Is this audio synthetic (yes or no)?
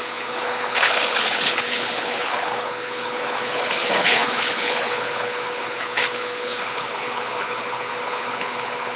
yes